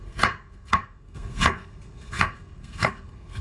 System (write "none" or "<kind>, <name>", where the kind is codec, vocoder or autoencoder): codec, SNAC